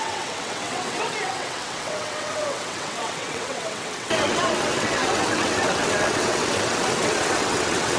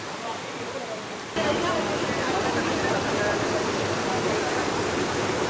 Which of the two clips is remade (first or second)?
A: first